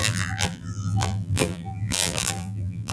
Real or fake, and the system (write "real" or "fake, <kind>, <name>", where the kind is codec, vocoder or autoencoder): fake, vocoder, BigVGAN v2